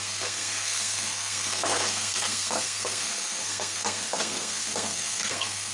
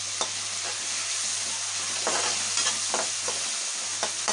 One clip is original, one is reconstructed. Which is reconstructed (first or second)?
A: first